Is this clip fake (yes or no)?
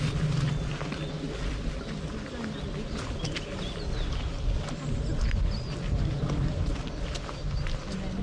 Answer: no